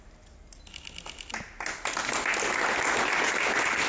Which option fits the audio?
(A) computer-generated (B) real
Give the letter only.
B